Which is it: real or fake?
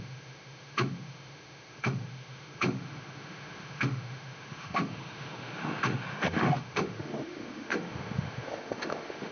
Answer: fake